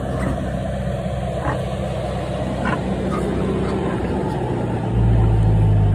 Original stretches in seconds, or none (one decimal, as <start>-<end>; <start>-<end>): 0.0-0.6; 1.2-2.8; 4.8-5.9